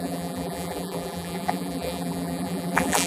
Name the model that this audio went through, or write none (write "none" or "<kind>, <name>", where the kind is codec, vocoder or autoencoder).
vocoder, BigVGAN v2